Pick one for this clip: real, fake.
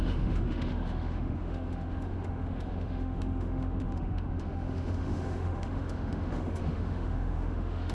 fake